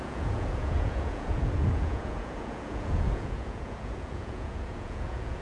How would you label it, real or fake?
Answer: fake